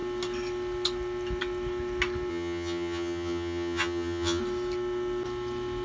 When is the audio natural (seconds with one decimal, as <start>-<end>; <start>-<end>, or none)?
0.0-2.3; 4.4-5.8